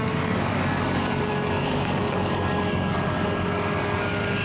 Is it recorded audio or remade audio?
remade